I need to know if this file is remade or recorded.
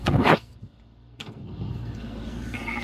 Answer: remade